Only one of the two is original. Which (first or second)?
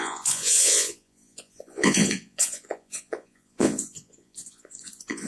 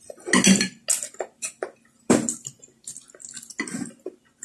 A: second